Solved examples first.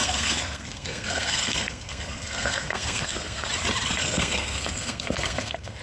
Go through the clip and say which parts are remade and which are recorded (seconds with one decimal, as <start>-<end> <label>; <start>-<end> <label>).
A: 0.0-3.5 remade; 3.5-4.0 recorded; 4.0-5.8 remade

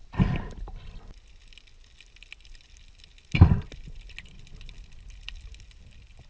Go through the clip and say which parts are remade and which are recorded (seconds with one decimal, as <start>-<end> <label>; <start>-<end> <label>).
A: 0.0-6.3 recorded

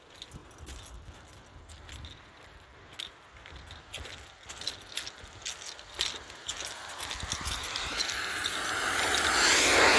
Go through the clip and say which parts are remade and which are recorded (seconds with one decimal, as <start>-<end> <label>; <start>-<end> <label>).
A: 0.0-10.0 recorded

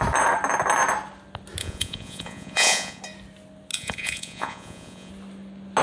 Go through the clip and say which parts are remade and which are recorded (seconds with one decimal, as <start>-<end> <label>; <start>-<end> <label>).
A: 0.0-1.6 recorded; 1.6-3.0 remade; 3.0-3.7 recorded; 3.7-5.1 remade; 5.1-5.8 recorded

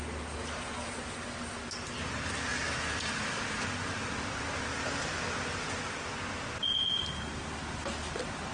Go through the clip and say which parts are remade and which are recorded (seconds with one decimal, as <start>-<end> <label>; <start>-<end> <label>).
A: 0.0-8.5 recorded